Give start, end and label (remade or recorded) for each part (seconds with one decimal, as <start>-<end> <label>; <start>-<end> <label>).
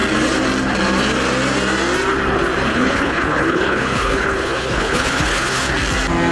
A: 0.0-2.7 recorded; 2.7-5.7 remade; 5.7-6.3 recorded